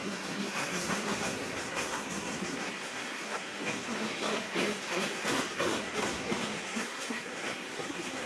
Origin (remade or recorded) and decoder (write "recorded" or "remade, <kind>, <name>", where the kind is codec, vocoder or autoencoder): remade, codec, SNAC